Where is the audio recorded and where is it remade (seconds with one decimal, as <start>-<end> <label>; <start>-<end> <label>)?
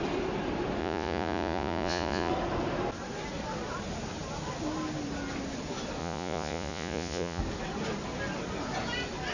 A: 0.0-0.8 recorded; 0.8-2.3 remade; 2.3-6.0 recorded; 6.0-7.4 remade; 7.4-9.3 recorded